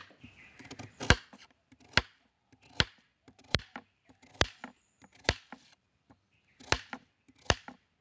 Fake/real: real